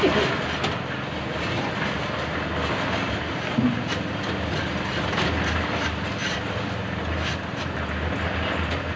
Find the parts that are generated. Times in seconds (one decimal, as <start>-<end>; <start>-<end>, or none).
6.2-7.6